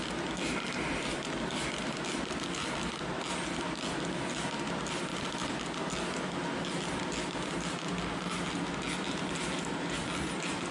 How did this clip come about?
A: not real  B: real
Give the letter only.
B